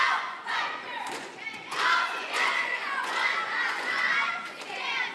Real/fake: fake